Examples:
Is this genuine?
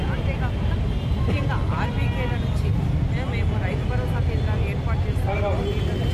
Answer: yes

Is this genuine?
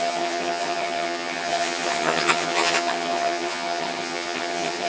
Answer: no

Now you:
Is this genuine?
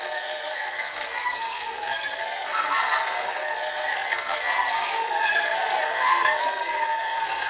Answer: no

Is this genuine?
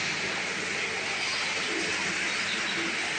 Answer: yes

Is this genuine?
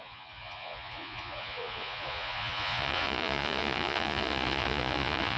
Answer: no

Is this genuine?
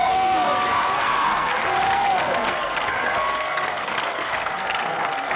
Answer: no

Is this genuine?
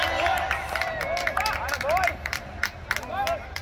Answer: yes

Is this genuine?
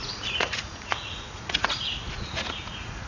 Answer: no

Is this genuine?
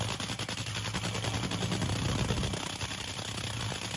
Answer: yes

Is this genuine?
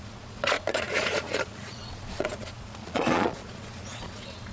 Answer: no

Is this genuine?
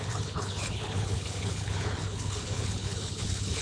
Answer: no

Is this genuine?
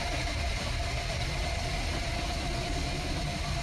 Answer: yes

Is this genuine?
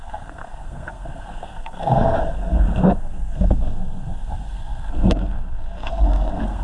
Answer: no